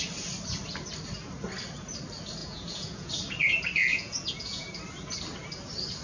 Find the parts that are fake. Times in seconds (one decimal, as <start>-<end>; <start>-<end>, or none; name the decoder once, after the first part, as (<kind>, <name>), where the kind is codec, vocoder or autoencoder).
2.4-3.1 (vocoder, Vocos); 3.8-4.8